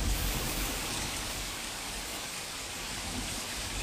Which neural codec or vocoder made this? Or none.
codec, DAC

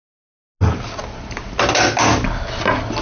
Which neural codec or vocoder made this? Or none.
none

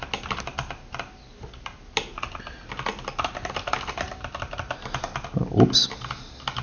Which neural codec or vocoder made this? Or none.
none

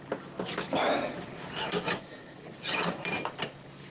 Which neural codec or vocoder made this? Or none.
none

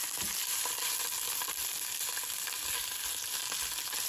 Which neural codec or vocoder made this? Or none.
none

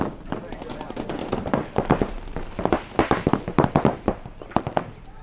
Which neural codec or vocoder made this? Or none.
none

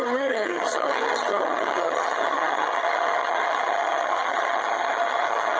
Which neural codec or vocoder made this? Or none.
vocoder, HiFi-GAN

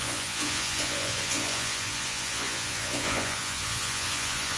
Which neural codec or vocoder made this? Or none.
vocoder, Vocos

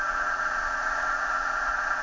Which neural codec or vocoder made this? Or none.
vocoder, Vocos